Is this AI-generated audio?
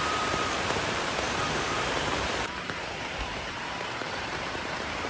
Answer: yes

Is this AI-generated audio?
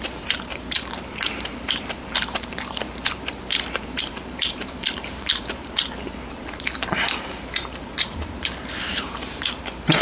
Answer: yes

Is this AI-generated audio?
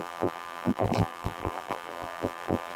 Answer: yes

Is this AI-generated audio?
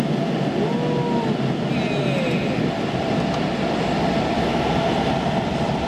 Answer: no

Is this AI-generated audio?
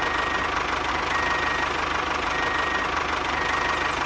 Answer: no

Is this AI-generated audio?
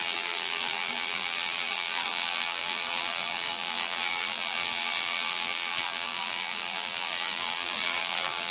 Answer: yes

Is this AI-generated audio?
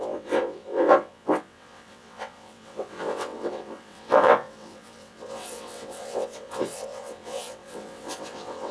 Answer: yes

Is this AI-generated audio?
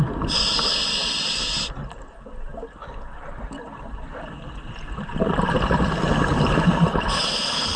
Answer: no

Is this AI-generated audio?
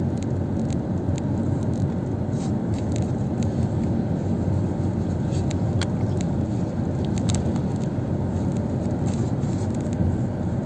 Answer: no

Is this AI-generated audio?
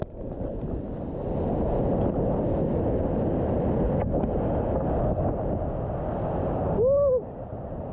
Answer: no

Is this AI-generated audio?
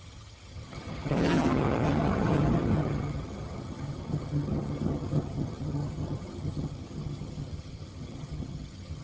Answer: yes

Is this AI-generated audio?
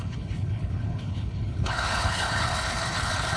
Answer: yes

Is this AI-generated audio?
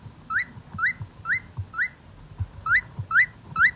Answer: no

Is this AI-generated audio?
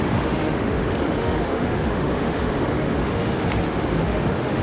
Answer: yes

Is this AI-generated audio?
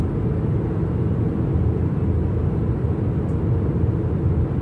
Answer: no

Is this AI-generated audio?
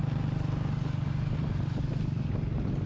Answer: no